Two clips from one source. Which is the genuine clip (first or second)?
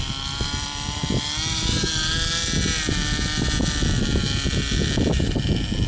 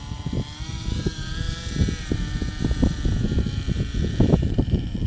first